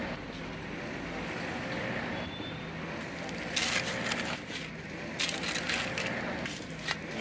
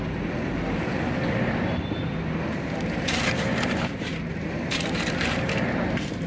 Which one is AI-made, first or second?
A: second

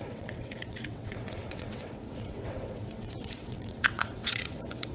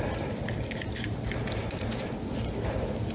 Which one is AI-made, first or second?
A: first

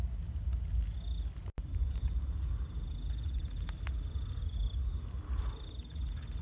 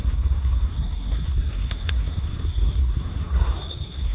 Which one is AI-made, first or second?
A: second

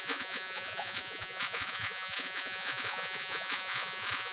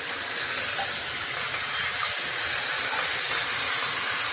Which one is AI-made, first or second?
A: first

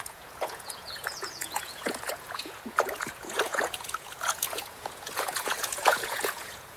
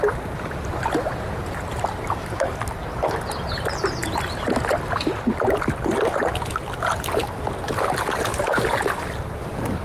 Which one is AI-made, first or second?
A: first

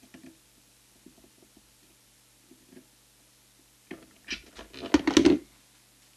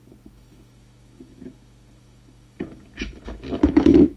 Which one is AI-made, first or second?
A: second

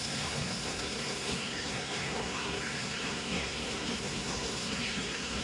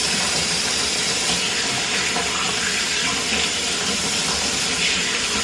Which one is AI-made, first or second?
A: first